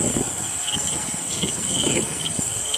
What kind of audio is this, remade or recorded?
remade